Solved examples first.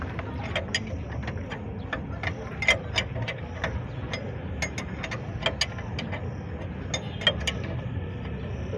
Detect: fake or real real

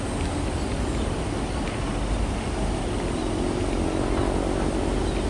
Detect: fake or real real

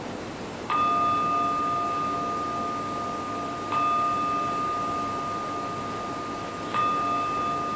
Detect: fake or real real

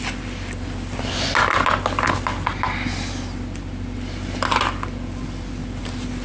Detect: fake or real real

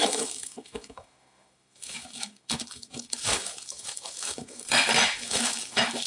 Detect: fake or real fake